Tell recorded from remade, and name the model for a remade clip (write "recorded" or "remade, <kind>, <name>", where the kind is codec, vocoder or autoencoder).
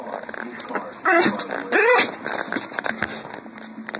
recorded